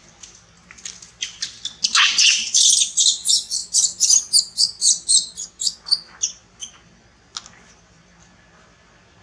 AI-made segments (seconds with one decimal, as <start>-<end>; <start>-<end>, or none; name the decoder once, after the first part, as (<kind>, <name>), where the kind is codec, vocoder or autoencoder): none

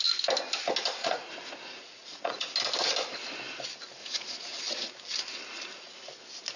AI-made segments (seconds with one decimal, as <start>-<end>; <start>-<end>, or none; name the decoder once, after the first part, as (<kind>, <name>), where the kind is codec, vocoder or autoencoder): 1.0-2.5 (vocoder, Vocos); 4.0-4.6

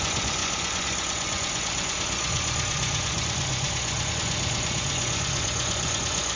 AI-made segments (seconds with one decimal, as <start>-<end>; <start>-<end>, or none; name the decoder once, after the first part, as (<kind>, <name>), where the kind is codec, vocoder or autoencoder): 0.0-6.4 (vocoder, Vocos)

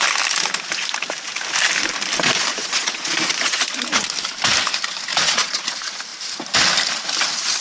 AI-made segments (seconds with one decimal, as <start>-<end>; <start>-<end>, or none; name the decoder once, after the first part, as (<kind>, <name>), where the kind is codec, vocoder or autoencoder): 2.5-3.7 (vocoder, Vocos); 5.1-5.6

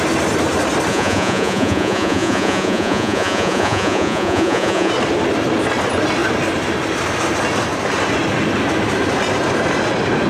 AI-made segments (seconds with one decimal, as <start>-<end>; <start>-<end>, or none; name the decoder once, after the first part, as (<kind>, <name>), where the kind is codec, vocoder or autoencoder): 0.9-4.9 (vocoder, Vocos)